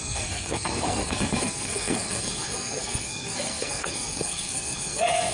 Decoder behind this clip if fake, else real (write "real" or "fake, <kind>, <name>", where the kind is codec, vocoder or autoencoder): fake, codec, SNAC